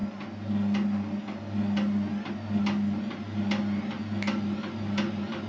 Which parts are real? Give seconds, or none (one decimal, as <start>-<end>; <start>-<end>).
0.0-5.5